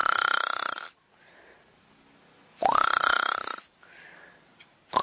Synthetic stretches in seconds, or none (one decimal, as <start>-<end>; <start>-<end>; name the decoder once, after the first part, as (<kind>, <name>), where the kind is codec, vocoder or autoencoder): none